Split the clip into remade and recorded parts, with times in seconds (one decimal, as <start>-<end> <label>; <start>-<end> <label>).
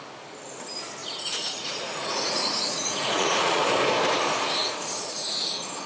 0.0-1.0 recorded; 1.0-3.6 remade; 3.6-4.6 recorded; 4.6-5.5 remade; 5.5-5.9 recorded